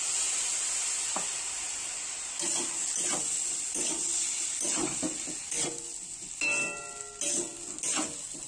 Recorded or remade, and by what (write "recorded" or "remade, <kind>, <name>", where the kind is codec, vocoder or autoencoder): recorded